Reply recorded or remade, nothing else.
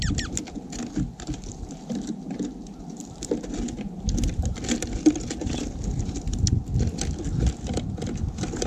recorded